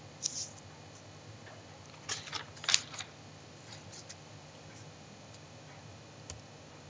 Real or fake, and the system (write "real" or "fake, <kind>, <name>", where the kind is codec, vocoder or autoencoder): real